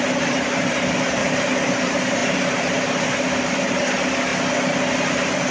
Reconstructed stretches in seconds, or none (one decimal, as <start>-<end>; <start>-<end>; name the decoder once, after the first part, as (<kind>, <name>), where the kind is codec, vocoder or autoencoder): 0.0-1.2 (vocoder, BigVGAN v2); 1.7-4.3; 5.1-5.5